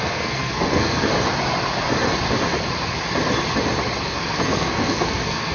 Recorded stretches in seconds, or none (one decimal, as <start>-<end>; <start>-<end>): 1.1-4.0